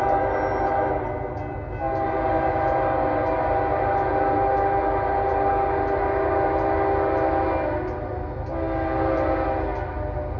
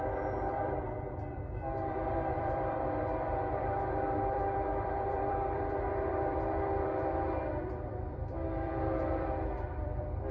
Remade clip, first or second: second